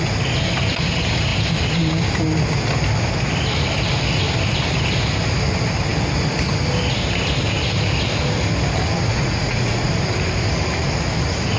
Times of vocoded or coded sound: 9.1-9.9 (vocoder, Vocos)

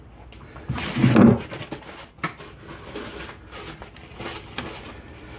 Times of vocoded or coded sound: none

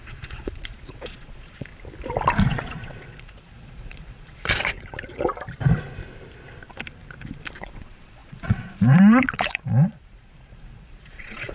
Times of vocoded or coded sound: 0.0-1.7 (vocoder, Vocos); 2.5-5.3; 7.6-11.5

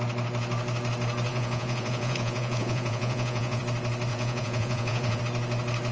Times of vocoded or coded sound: 1.3-3.6 (vocoder, Vocos); 4.1-5.2

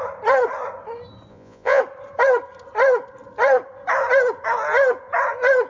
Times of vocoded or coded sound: 1.3-1.8 (vocoder, Vocos)

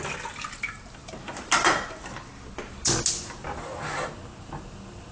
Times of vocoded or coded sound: none

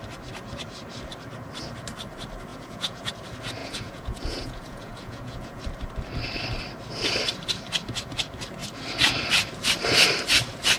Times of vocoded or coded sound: 2.5-3.1 (vocoder, Vocos); 3.6-5.6